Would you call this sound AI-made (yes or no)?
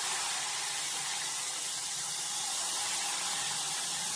no